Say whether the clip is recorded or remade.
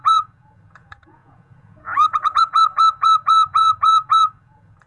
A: remade